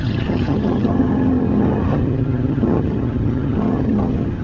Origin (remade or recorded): remade